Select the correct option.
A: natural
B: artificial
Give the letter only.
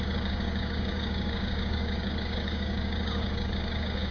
B